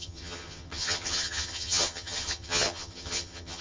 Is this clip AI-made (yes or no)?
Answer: yes